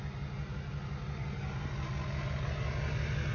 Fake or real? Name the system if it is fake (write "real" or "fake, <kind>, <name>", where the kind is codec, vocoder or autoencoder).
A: real